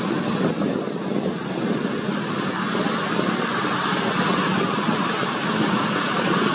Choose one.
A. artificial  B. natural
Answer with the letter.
B